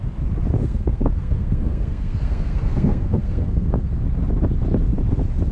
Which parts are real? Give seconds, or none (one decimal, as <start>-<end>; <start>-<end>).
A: 0.0-0.6; 3.9-5.5